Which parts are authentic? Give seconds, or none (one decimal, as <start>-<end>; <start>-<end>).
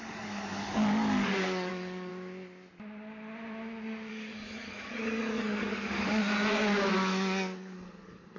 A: 2.1-4.1; 6.2-6.9